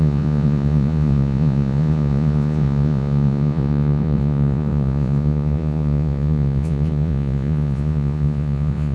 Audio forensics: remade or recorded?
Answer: remade